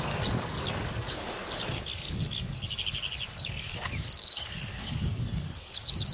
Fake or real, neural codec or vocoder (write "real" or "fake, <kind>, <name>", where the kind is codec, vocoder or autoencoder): fake, codec, DAC